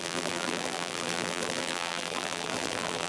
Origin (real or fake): fake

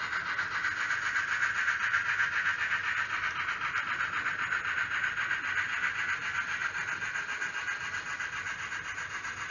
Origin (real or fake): real